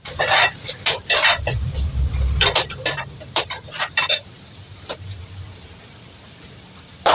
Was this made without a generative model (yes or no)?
no